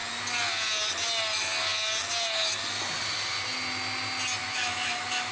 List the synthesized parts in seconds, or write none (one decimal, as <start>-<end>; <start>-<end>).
4.4-5.3